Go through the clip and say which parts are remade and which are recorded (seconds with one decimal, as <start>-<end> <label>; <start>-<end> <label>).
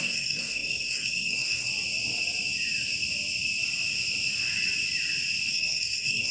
0.0-1.7 remade; 1.7-5.5 recorded; 5.5-6.3 remade